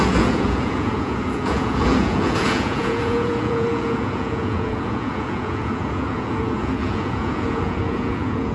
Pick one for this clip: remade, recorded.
remade